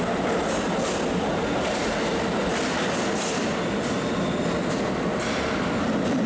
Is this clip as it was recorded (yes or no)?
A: yes